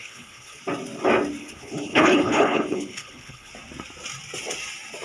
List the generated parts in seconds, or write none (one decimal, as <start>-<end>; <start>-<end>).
0.0-0.6; 1.4-3.5